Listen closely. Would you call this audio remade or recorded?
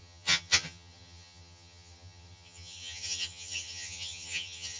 remade